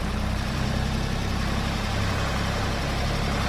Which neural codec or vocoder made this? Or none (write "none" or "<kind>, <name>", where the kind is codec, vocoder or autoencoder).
vocoder, BigVGAN v2